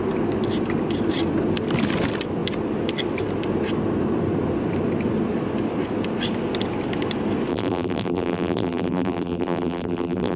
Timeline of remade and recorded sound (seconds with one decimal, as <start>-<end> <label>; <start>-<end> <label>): 0.0-7.5 recorded; 7.5-10.4 remade

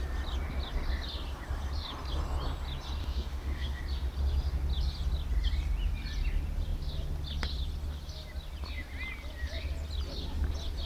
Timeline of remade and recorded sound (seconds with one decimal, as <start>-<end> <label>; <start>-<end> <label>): 0.0-3.0 recorded; 3.0-3.8 remade; 3.8-10.9 recorded

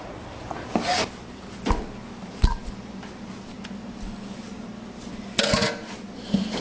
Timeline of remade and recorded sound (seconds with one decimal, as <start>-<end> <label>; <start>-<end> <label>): 0.0-6.6 recorded

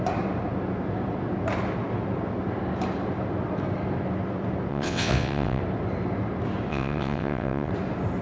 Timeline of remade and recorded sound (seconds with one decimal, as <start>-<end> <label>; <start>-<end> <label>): 0.0-4.7 recorded; 4.7-5.6 remade; 5.6-6.7 recorded; 6.7-7.7 remade; 7.7-8.2 recorded

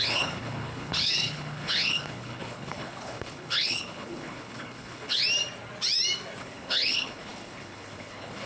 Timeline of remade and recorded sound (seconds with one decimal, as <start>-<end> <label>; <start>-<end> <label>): 0.0-5.2 remade; 5.2-6.4 recorded; 6.4-8.5 remade

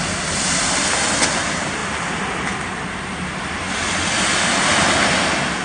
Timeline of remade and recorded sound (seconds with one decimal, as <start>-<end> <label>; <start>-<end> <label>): 0.0-5.6 recorded